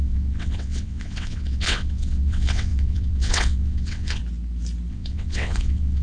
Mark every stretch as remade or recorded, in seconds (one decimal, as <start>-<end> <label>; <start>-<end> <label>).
0.0-4.2 remade; 4.2-4.9 recorded; 4.9-6.0 remade